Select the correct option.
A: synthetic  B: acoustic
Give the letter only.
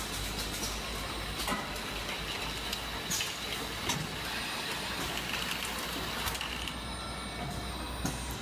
B